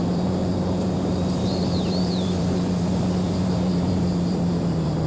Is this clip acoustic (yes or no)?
no